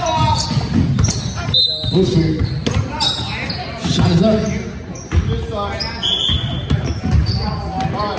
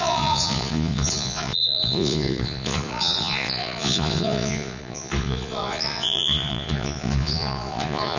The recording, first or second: first